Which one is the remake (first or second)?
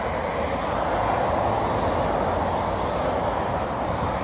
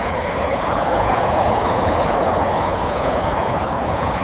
second